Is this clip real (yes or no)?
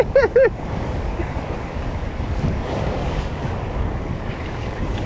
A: no